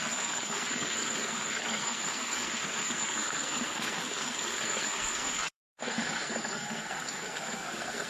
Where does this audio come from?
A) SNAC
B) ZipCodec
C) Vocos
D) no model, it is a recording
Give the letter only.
A